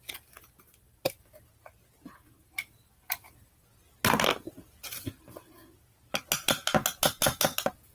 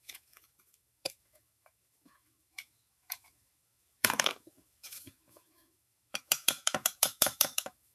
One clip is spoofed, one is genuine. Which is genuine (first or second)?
first